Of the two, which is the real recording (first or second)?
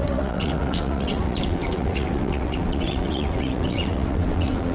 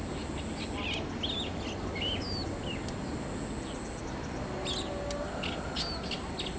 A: second